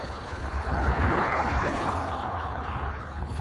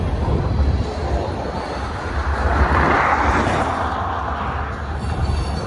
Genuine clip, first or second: second